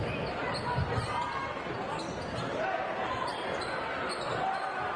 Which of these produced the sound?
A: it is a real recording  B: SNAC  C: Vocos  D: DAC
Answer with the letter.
A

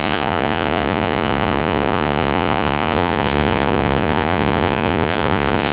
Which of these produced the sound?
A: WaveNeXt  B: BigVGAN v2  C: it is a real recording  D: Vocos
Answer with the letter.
D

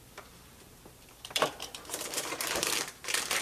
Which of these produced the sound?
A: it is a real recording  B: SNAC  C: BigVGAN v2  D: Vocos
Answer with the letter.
C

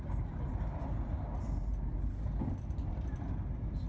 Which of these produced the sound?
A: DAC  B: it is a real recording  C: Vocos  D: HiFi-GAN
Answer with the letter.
B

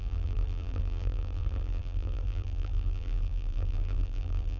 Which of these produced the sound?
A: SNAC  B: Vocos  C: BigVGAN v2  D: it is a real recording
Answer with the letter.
C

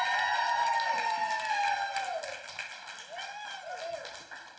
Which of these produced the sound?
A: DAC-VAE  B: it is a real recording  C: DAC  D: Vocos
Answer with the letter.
B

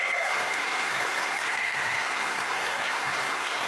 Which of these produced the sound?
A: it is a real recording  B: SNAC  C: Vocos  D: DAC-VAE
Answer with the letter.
B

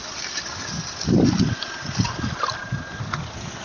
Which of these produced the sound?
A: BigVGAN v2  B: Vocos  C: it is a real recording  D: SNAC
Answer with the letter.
C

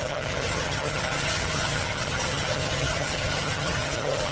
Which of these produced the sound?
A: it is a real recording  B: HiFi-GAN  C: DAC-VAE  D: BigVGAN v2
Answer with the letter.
B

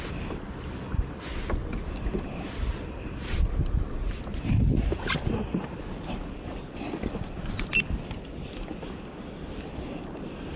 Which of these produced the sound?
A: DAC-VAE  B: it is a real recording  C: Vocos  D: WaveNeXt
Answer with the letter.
B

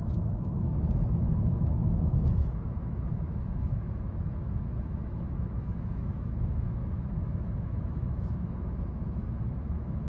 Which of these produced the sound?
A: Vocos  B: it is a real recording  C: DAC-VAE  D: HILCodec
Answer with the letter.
C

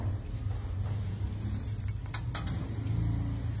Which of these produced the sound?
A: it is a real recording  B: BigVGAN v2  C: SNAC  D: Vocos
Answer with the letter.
A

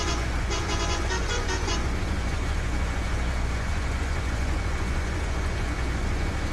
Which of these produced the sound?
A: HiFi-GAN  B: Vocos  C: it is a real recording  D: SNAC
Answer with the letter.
B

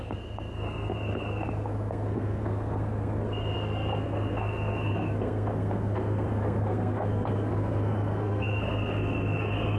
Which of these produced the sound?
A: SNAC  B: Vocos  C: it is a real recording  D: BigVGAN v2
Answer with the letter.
A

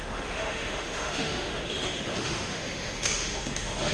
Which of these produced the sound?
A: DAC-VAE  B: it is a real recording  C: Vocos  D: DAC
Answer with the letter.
A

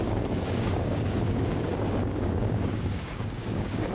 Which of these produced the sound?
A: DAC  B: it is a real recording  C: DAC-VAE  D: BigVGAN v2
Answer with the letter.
A